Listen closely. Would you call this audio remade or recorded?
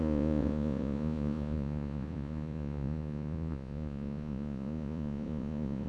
remade